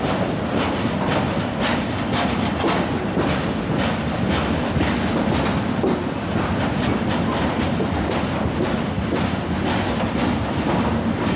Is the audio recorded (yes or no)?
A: yes